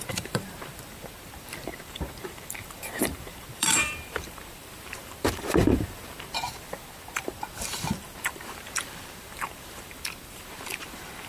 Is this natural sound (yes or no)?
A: no